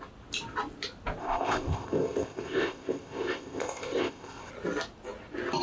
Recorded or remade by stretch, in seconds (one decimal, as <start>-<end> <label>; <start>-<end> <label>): 0.0-1.2 recorded; 1.2-4.5 remade; 4.5-5.6 recorded

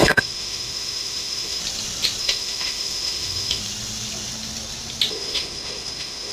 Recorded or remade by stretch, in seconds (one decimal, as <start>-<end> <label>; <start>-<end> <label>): 0.0-1.6 remade; 1.6-2.2 recorded; 2.2-3.6 remade; 3.6-5.1 recorded; 5.1-6.3 remade

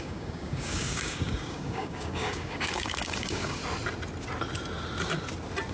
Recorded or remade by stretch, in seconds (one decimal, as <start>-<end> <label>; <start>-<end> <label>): 0.0-3.6 remade; 3.6-5.7 recorded

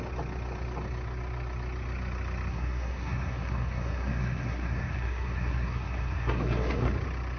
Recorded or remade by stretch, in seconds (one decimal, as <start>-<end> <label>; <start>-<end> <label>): 0.0-2.5 recorded; 2.5-6.9 remade; 6.9-7.4 recorded

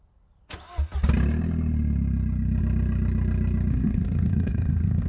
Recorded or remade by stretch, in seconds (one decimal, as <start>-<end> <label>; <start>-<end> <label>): 0.0-3.7 recorded; 3.7-5.1 remade

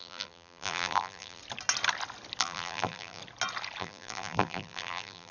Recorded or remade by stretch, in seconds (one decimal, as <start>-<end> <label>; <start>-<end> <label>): 0.0-1.4 remade; 1.4-2.4 recorded; 2.4-3.2 remade; 3.2-3.8 recorded; 3.8-5.3 remade